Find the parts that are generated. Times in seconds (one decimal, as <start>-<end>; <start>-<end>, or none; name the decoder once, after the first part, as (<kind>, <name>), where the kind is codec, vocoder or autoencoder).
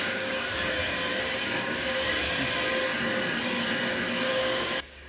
0.0-0.8 (codec, DAC); 1.7-2.1; 4.3-5.1